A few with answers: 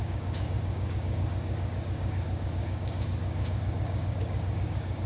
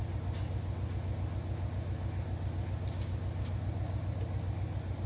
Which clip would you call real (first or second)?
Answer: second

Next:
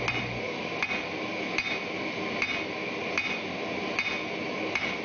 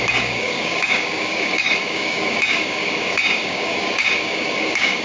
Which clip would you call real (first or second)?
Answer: first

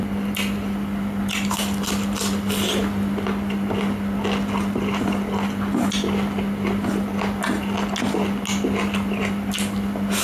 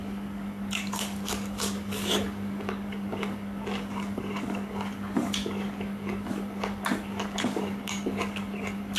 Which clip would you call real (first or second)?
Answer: first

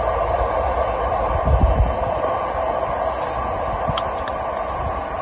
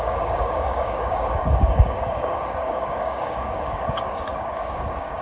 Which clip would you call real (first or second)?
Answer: first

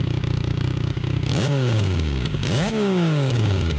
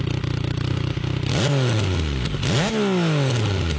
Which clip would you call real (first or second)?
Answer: second